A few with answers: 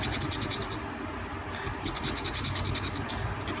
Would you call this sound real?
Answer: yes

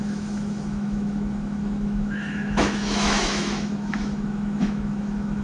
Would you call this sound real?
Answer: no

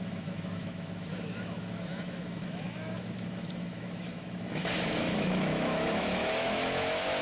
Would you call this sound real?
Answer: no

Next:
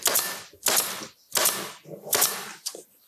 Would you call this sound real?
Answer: yes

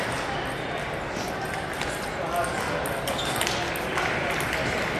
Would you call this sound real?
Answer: yes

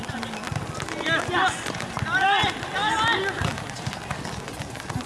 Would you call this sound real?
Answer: yes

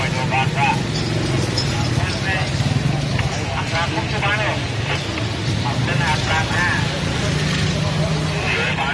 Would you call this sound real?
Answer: yes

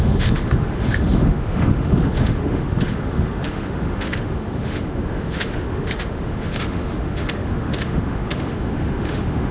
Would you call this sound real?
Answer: no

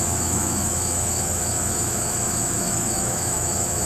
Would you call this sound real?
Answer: no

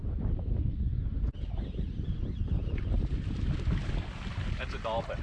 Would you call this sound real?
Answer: yes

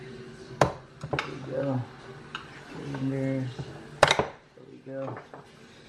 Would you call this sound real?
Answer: yes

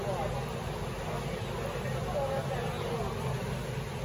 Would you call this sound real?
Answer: yes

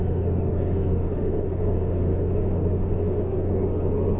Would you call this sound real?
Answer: no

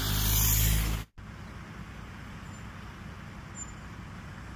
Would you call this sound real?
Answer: yes